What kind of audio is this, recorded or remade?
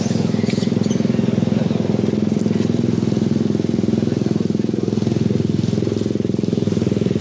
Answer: recorded